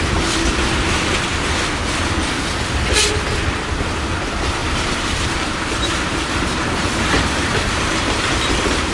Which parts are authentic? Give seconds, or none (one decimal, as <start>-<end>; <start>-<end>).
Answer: 0.0-4.6; 8.5-8.9